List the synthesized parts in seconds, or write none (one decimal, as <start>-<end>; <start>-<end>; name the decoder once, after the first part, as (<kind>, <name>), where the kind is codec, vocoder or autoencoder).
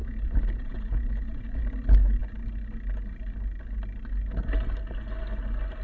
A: 0.0-1.6 (vocoder, Vocos)